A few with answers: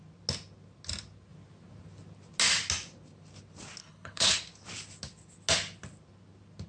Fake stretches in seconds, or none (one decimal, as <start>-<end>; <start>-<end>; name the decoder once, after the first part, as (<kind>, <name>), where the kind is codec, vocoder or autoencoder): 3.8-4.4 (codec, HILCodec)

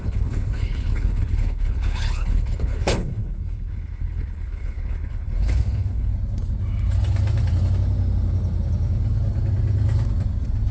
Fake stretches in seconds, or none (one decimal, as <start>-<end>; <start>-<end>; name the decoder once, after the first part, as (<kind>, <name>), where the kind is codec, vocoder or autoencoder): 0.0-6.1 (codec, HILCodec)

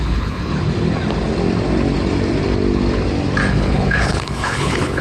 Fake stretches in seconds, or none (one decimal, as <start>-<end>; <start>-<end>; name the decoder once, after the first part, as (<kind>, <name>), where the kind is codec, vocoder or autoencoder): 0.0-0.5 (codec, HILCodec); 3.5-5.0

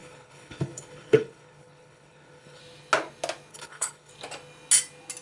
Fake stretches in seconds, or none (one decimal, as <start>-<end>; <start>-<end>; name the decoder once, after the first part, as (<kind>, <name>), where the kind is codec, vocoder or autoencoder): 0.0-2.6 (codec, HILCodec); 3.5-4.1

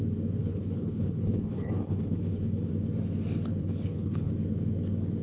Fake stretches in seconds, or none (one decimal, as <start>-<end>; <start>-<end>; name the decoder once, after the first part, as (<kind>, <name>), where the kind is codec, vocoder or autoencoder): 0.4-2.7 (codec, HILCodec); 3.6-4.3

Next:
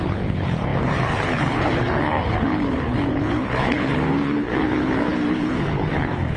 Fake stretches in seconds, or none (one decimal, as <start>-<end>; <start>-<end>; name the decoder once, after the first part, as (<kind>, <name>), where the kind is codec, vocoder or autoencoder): 0.0-6.4 (codec, HILCodec)

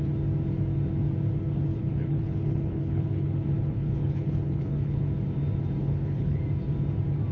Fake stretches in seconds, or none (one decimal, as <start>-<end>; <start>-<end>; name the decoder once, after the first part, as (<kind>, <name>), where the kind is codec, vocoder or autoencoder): 1.7-5.0 (codec, HILCodec); 5.8-6.4